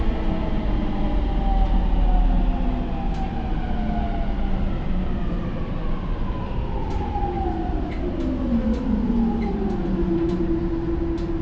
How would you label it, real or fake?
real